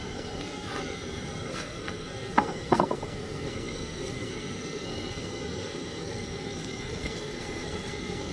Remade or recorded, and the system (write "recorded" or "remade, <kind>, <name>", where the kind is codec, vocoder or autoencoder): remade, codec, SNAC